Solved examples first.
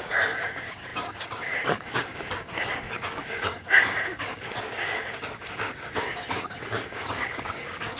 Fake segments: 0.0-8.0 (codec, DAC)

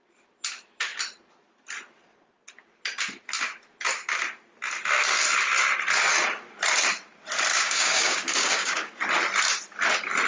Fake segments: 7.5-8.9 (codec, DAC)

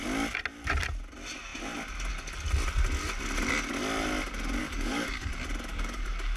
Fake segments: 4.6-5.3 (codec, DAC); 5.7-6.4

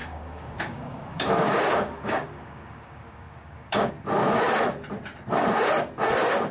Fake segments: 0.0-3.9 (codec, DAC)

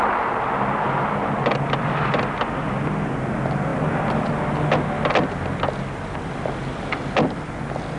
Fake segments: none

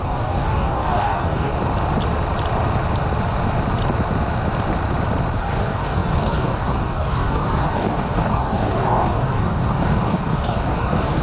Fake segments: 0.0-1.5 (codec, DAC); 5.4-11.2

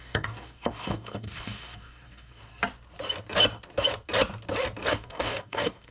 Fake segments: 0.0-2.5 (codec, DAC); 4.9-5.9

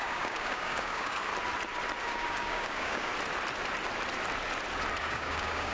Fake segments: 0.0-1.3 (codec, DAC); 2.0-3.1; 5.0-5.7